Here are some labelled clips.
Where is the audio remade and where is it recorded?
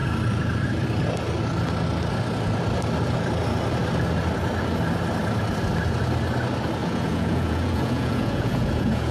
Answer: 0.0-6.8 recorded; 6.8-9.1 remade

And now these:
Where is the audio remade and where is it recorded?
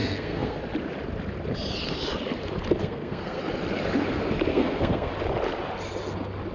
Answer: 0.0-0.6 remade; 0.6-2.8 recorded; 2.8-3.4 remade; 3.4-4.5 recorded; 4.5-5.1 remade; 5.1-6.5 recorded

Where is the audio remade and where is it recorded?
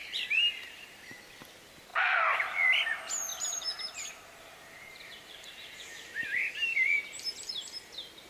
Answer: 0.0-1.0 remade; 1.0-3.3 recorded; 3.3-7.5 remade; 7.5-8.3 recorded